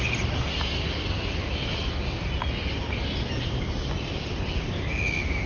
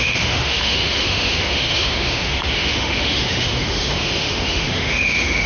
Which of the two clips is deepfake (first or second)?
second